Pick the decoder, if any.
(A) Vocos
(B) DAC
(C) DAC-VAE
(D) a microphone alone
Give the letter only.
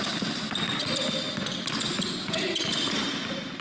D